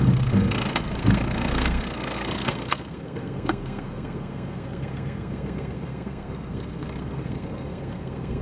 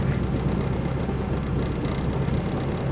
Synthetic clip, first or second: first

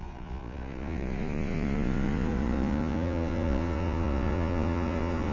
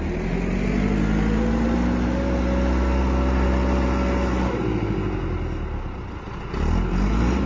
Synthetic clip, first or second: first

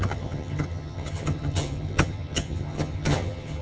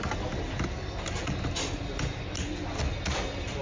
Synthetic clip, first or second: first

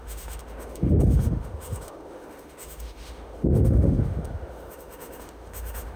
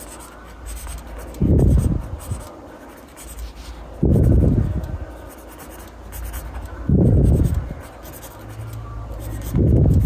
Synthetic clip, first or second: first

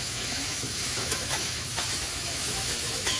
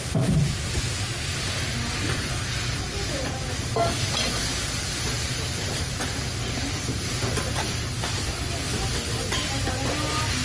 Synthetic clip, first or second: first